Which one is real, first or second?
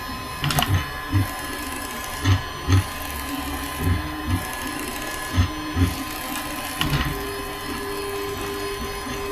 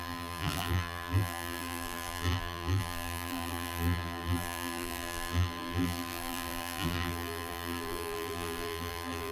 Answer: first